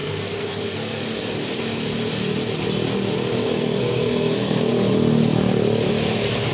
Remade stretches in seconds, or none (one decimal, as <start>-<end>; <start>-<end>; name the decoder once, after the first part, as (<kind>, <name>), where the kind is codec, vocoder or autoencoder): 0.0-1.0 (codec, SNAC); 3.4-4.7